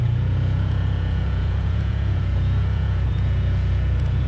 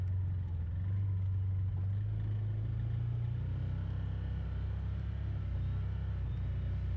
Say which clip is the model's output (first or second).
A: first